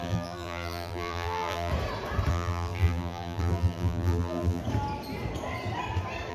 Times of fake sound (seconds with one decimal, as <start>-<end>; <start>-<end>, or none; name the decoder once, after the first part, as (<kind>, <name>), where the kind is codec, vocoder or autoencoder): 0.0-1.7 (vocoder, BigVGAN v2); 2.3-4.6